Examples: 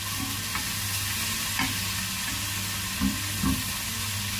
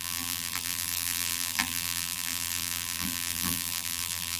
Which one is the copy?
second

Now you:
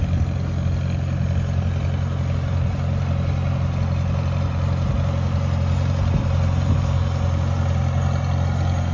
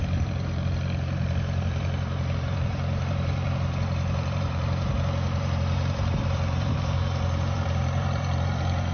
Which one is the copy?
second